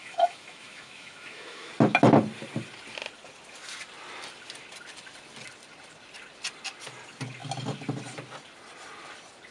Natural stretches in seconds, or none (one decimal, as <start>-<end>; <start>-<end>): 1.7-9.5